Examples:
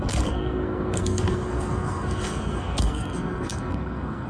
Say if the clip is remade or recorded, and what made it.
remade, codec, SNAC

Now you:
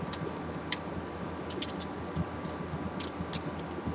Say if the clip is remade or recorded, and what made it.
recorded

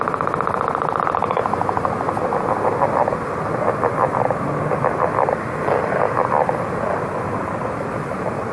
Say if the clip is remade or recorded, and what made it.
recorded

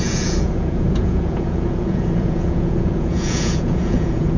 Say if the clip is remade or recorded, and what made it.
remade, vocoder, Vocos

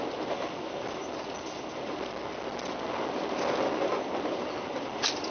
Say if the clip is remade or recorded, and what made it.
recorded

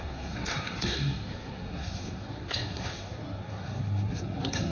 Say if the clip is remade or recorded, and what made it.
remade, codec, SNAC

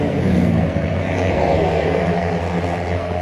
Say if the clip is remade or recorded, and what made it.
remade, codec, SNAC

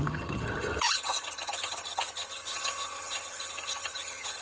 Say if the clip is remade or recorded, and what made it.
remade, vocoder, HiFi-GAN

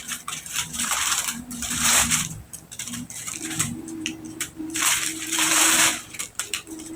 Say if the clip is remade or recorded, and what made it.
remade, vocoder, BigVGAN v2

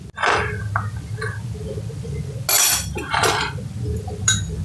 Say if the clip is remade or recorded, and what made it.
recorded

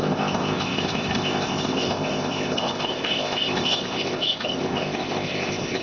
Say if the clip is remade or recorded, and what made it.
remade, codec, ZipCodec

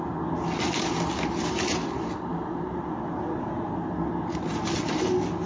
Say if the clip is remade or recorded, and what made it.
recorded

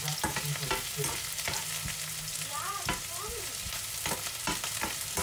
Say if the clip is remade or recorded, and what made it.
recorded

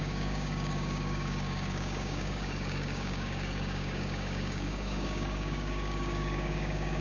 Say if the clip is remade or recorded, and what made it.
remade, codec, DAC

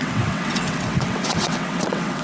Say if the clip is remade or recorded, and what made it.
remade, vocoder, WaveNeXt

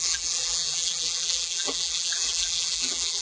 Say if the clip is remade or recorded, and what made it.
remade, vocoder, BigVGAN v2